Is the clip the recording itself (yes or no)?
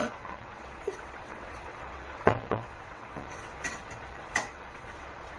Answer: no